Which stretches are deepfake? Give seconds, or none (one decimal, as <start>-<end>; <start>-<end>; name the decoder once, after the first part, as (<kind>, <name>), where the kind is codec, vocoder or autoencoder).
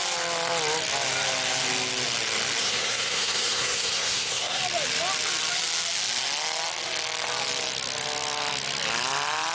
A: 2.6-4.6 (codec, SNAC)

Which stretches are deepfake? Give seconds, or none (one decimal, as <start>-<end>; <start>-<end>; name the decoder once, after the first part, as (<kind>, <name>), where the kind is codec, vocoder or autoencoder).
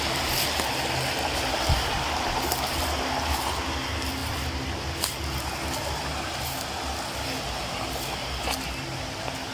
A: none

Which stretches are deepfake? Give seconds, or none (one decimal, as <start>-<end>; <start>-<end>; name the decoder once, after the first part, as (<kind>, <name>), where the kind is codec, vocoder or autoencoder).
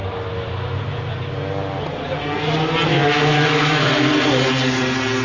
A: 2.9-3.9 (autoencoder, DAC-VAE)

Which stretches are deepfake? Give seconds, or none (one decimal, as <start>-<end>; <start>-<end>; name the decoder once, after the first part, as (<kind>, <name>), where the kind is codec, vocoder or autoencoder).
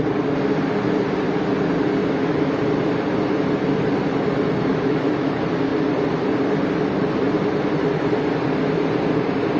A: 2.0-2.6 (autoencoder, DAC-VAE); 4.7-5.3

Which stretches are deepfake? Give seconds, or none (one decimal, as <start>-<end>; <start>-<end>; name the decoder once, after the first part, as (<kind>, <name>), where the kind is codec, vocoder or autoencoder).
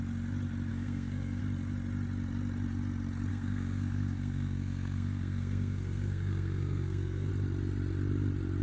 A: 0.7-1.4 (codec, SNAC); 3.3-7.3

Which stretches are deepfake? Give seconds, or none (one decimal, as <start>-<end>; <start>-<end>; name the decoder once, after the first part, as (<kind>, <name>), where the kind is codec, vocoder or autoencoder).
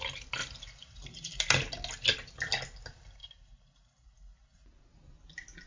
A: 0.4-1.5 (vocoder, BigVGAN v2); 3.2-4.1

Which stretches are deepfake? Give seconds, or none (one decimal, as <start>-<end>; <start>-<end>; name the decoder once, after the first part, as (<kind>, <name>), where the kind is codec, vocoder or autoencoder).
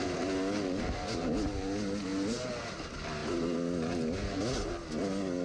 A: none